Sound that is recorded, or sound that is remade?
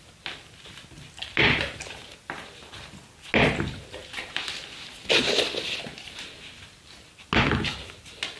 recorded